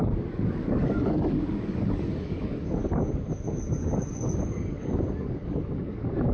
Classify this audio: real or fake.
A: fake